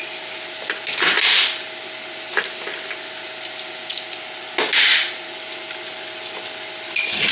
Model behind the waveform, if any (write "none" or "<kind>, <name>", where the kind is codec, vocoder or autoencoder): none